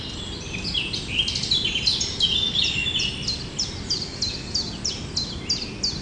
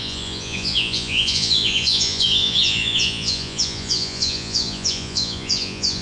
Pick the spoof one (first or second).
second